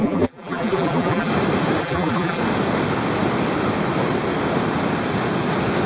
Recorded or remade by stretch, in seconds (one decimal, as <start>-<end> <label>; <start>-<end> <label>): 0.0-1.3 remade; 1.3-1.8 recorded; 1.8-2.4 remade; 2.4-5.9 recorded

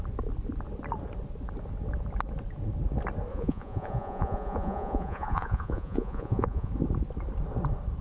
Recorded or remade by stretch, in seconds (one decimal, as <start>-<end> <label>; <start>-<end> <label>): 0.0-3.3 recorded; 3.3-6.7 remade; 6.7-8.0 recorded

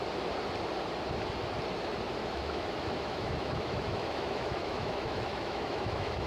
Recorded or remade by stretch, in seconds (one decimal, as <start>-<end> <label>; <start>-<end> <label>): 0.0-2.2 recorded; 2.2-6.3 remade

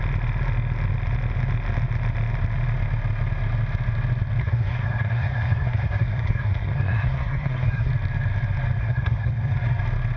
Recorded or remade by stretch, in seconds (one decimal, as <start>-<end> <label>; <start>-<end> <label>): 0.0-4.4 recorded; 4.4-7.9 remade; 7.9-8.8 recorded; 8.8-9.3 remade; 9.3-10.2 recorded